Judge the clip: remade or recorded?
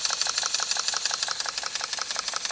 recorded